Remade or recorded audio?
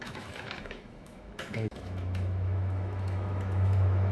remade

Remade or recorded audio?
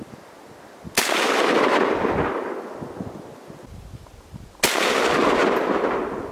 recorded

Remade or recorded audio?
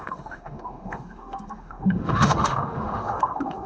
remade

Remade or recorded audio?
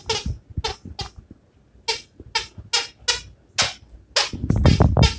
recorded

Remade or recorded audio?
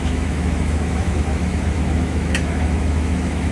remade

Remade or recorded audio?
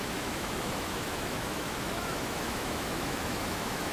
remade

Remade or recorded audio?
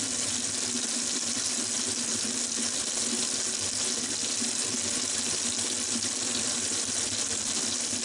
recorded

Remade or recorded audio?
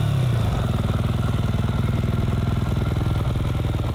recorded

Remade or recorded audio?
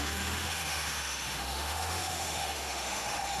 remade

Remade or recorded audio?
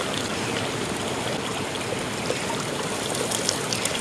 recorded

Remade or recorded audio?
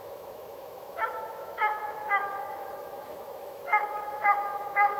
remade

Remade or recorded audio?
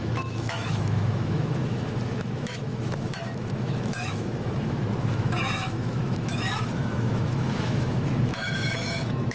remade